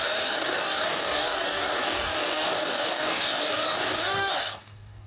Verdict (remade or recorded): remade